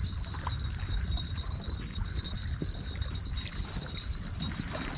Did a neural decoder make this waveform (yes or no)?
no